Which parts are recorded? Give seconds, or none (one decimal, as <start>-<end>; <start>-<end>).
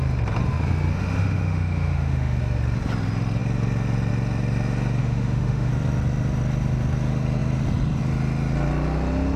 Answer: 0.0-0.9; 2.4-5.0; 5.7-9.4